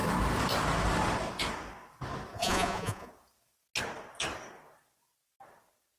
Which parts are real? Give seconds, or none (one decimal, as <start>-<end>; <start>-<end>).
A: 0.0-2.3; 3.1-6.0